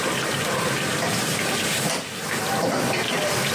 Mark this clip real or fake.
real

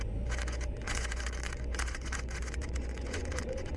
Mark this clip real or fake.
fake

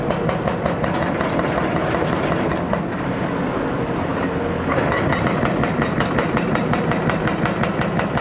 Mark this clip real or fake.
real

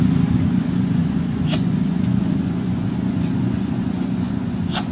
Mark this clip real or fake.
fake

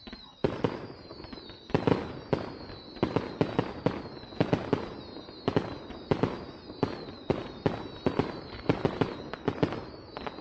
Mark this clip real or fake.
real